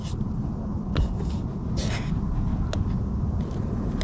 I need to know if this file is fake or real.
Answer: real